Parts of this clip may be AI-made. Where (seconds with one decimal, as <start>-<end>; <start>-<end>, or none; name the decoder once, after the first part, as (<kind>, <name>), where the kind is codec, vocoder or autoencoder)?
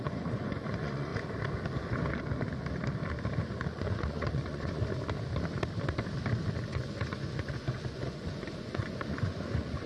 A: 0.0-1.1 (vocoder, Vocos); 3.7-4.8; 6.7-9.9